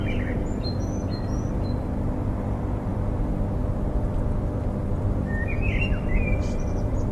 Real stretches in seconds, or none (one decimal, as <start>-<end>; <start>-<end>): 2.9-5.8